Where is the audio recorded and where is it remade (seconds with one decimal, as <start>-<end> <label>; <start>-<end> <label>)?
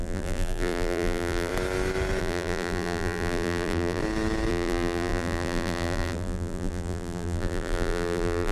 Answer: 0.0-1.5 remade; 1.5-2.2 recorded; 2.2-4.0 remade; 4.0-4.5 recorded; 4.5-8.5 remade